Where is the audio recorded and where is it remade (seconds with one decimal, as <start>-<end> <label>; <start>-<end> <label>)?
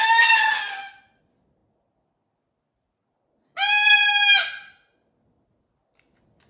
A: 0.0-6.5 recorded